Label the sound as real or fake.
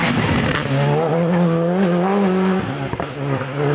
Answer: real